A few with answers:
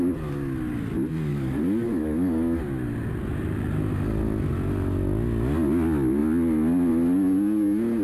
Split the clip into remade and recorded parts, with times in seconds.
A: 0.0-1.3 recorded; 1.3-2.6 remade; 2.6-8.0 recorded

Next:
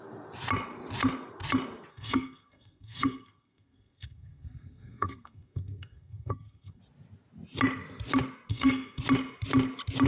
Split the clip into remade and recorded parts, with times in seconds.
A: 0.0-1.9 recorded; 1.9-6.8 remade; 6.8-8.5 recorded; 8.5-9.0 remade; 9.0-10.1 recorded